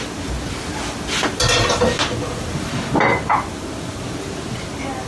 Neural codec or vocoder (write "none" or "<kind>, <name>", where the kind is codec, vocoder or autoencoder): none